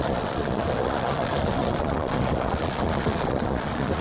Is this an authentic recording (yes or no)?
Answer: no